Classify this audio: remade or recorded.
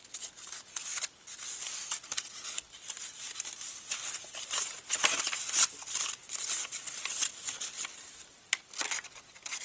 recorded